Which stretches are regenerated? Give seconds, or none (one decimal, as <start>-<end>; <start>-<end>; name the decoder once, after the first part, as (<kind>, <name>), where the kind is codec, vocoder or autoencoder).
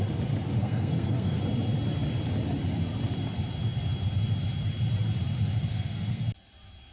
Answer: 0.6-1.4 (codec, SNAC); 5.7-6.2